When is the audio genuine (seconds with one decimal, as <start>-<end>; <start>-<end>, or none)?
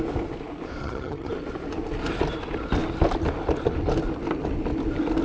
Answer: 0.0-0.8; 1.3-5.2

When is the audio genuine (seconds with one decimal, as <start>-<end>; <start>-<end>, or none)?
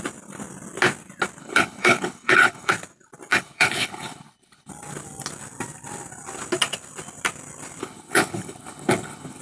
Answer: 0.0-1.4; 2.7-3.3; 4.7-7.8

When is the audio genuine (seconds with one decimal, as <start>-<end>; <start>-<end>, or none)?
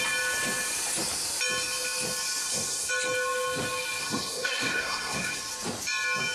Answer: 0.0-2.4; 2.9-4.0; 5.4-6.3